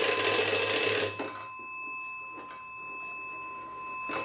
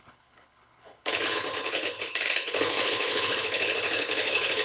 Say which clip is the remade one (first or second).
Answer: second